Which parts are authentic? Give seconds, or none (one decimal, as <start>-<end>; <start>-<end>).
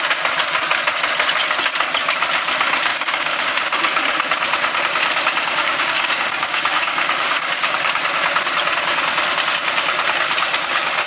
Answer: 0.0-2.9; 3.5-5.6; 8.0-11.1